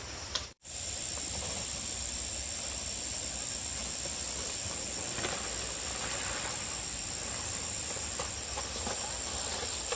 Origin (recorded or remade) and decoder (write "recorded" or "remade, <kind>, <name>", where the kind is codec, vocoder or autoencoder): recorded